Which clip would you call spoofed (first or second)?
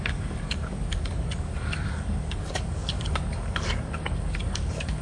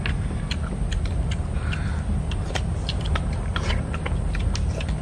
first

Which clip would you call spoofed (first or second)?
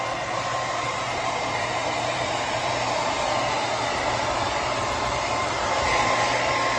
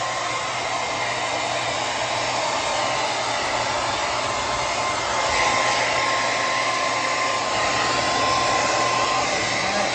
first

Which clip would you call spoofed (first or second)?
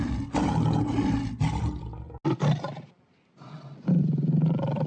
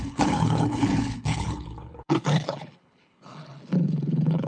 second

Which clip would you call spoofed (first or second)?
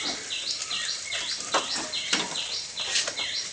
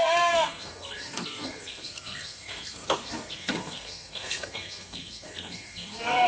second